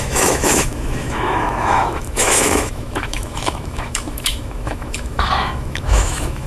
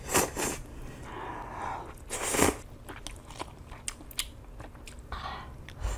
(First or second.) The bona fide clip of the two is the second